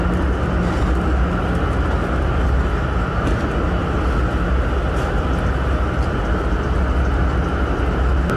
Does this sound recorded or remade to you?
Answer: recorded